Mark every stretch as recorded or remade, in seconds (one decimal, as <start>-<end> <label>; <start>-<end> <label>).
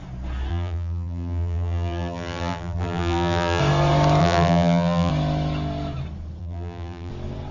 0.0-0.5 recorded; 0.5-3.6 remade; 3.6-4.2 recorded; 4.2-5.1 remade; 5.1-6.4 recorded; 6.4-7.1 remade; 7.1-7.5 recorded